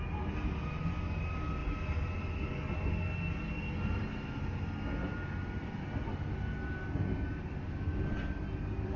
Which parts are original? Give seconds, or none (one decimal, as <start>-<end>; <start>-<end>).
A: 0.0-9.0